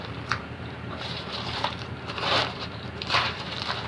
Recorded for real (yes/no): no